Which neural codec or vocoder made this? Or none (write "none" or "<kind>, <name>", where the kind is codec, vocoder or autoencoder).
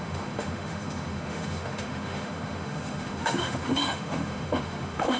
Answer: autoencoder, DAC-VAE